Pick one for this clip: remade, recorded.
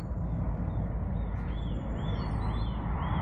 recorded